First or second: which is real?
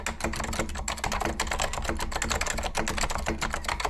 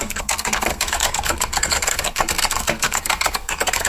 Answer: first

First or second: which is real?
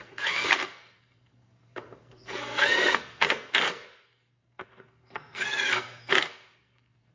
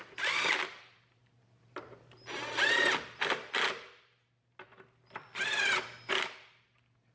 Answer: second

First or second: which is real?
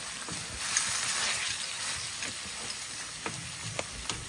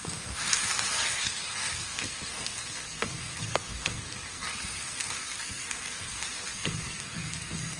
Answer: first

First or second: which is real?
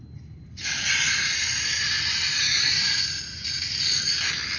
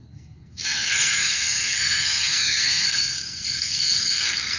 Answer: first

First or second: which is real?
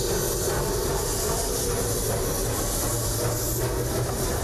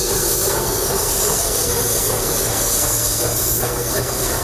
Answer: first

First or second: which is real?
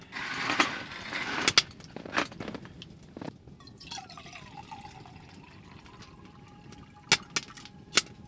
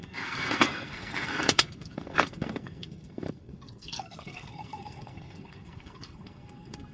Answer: first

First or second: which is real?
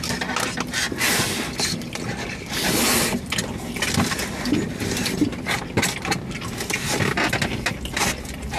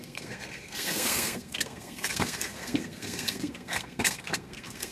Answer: first